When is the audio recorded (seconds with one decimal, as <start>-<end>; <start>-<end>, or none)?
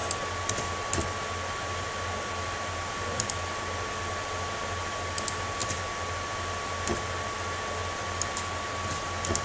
0.0-9.4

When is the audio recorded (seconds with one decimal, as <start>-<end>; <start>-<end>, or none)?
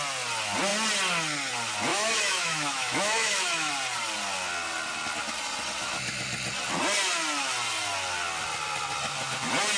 0.0-1.9; 3.7-9.8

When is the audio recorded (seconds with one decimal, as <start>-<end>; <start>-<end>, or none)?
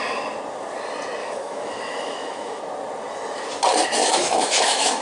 0.0-1.2; 2.6-4.0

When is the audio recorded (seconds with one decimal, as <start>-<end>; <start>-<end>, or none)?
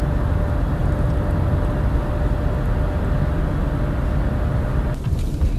0.0-5.6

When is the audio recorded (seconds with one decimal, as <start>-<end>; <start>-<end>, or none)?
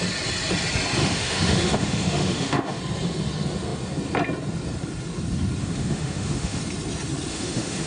0.0-1.0; 2.8-5.6; 6.6-7.3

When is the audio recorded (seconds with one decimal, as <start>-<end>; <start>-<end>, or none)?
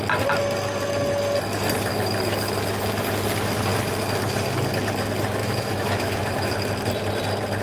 0.0-5.4; 6.5-7.6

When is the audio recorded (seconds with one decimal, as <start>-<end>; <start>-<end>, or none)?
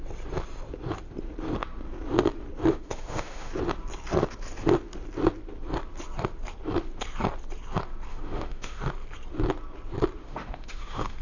0.0-2.7; 3.5-8.1; 8.8-10.2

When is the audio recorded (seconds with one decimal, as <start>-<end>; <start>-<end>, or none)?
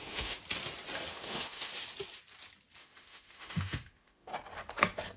0.4-1.1; 1.7-2.8; 4.3-5.2